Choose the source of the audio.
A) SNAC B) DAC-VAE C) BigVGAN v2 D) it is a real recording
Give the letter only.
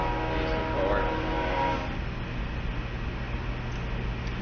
D